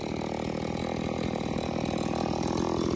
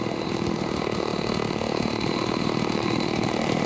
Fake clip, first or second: second